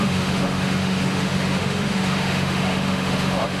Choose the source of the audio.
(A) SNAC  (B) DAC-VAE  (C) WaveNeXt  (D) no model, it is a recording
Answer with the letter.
B